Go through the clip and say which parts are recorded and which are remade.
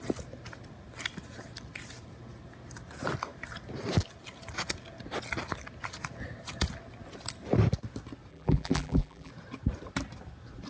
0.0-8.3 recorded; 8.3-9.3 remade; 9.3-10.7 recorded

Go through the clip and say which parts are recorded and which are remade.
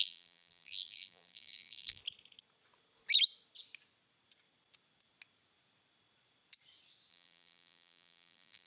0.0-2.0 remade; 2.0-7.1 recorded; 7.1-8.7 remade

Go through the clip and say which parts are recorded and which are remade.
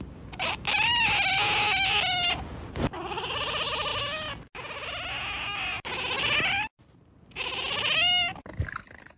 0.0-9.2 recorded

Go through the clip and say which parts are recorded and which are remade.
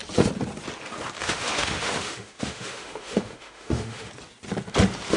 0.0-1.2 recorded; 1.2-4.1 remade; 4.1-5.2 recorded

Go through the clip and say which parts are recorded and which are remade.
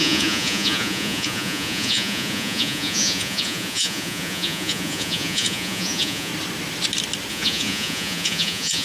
0.0-6.3 remade; 6.3-7.3 recorded; 7.3-8.8 remade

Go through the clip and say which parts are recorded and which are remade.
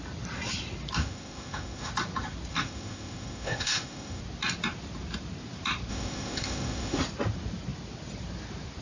0.0-1.0 recorded; 1.0-1.9 remade; 1.9-2.5 recorded; 2.5-4.2 remade; 4.2-5.9 recorded; 5.9-7.0 remade; 7.0-8.8 recorded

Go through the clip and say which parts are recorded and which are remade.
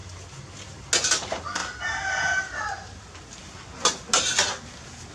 0.0-5.1 recorded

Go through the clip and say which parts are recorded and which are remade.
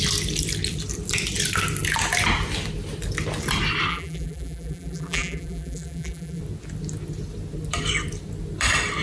0.0-3.9 recorded; 3.9-6.4 remade; 6.4-9.0 recorded